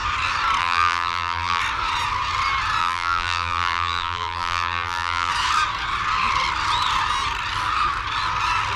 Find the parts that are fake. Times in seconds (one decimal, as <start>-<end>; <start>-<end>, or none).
0.6-1.6; 2.8-5.3